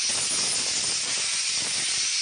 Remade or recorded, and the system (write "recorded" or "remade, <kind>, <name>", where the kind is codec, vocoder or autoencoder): recorded